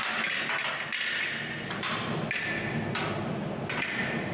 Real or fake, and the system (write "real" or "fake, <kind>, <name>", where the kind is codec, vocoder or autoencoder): real